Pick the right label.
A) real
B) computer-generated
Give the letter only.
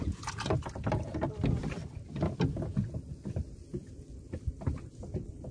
A